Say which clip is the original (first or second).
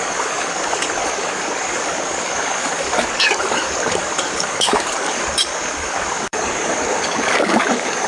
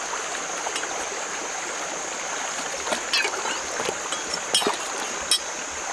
second